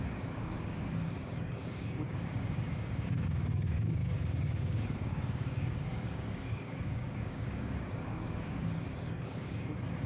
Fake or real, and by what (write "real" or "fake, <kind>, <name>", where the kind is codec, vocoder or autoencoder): fake, codec, DAC